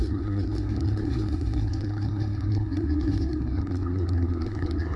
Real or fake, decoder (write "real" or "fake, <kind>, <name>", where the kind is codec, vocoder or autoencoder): fake, codec, SNAC